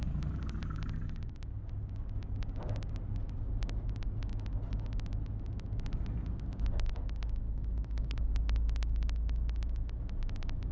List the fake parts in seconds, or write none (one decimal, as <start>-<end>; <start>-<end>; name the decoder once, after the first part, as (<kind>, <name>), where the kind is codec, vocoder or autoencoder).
7.5-8.3 (codec, SNAC)